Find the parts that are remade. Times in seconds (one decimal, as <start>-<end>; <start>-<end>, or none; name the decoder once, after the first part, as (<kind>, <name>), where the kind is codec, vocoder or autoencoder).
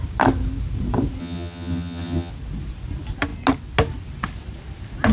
1.2-2.3 (vocoder, HiFi-GAN)